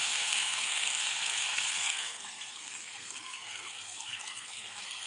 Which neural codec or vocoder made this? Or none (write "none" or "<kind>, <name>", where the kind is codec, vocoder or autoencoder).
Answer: codec, SNAC